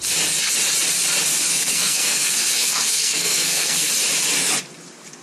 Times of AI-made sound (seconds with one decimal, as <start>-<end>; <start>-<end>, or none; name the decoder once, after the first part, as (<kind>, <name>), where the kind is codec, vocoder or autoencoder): 1.5-3.9 (codec, SNAC)